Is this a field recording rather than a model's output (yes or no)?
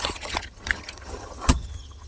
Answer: no